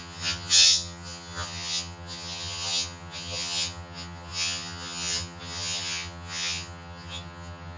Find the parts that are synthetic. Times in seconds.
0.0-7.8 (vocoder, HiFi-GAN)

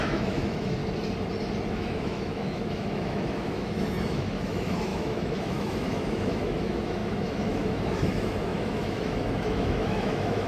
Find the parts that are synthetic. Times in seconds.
0.0-0.8 (autoencoder, DAC-VAE); 1.7-10.5

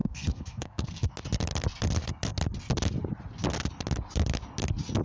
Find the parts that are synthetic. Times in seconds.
0.0-1.1 (codec, SNAC)